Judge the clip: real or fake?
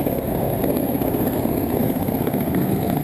fake